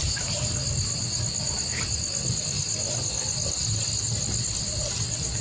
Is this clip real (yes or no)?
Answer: yes